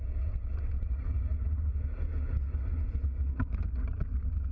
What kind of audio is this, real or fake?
real